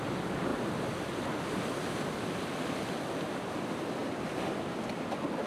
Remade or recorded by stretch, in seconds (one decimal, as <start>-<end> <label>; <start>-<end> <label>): 0.0-4.0 recorded; 4.0-5.1 remade; 5.1-5.5 recorded

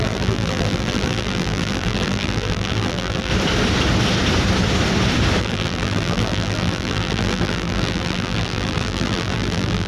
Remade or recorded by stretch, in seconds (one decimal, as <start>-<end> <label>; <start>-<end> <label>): 0.0-3.3 remade; 3.3-5.4 recorded; 5.4-9.9 remade

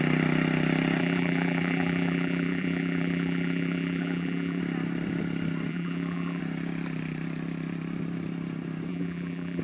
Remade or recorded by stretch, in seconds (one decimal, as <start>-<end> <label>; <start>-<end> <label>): 0.0-1.0 recorded; 1.0-4.6 remade; 4.6-5.7 recorded; 5.7-6.4 remade; 6.4-8.9 recorded; 8.9-9.6 remade

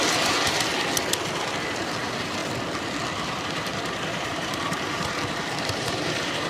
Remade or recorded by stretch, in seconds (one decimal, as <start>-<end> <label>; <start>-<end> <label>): 0.0-0.7 remade; 0.7-2.0 recorded; 2.0-2.4 remade; 2.4-3.2 recorded; 3.2-6.5 remade

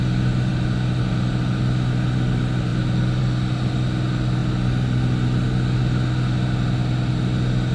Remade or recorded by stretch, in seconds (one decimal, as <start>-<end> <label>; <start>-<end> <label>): 0.0-7.7 recorded